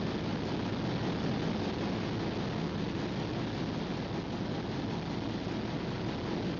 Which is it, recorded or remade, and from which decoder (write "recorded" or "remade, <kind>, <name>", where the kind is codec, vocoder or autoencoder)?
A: recorded